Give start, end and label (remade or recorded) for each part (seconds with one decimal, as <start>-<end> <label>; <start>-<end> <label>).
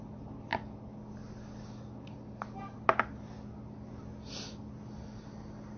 0.0-5.8 recorded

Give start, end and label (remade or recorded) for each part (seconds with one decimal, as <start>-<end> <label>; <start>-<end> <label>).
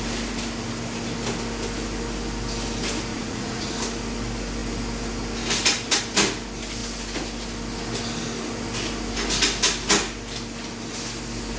0.0-3.1 recorded; 3.1-3.7 remade; 3.7-11.6 recorded